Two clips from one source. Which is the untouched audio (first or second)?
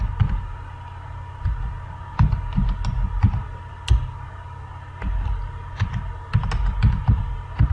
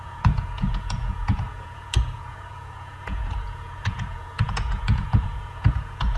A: first